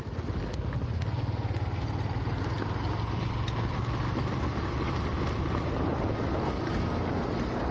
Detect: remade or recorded recorded